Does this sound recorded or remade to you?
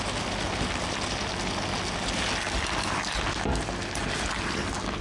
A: recorded